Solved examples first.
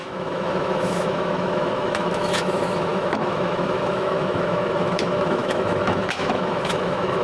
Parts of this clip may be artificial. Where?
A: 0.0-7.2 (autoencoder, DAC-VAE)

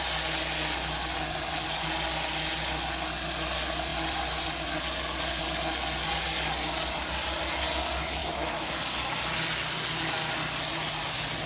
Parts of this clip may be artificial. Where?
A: 8.2-8.7 (autoencoder, DAC-VAE)

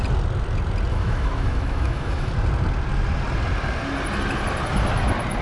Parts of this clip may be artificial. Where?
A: 0.9-2.3 (autoencoder, DAC-VAE)

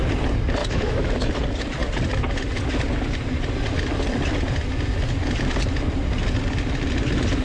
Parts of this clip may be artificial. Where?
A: 0.6-1.3 (autoencoder, DAC-VAE)

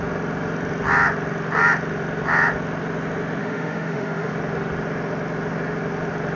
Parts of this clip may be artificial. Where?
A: 3.4-4.3 (autoencoder, DAC-VAE)